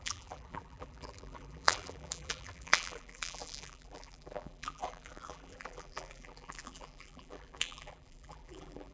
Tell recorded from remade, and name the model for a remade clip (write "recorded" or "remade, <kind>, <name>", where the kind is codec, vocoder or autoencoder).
remade, vocoder, BigVGAN v2